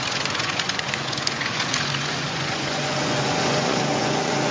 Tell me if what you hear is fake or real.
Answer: fake